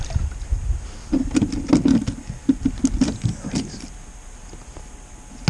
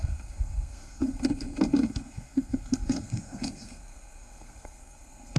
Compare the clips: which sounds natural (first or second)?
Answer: first